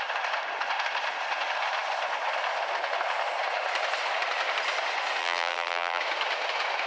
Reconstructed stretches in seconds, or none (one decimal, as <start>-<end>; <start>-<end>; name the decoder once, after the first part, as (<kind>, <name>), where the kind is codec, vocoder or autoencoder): 5.2-6.0 (vocoder, BigVGAN v2)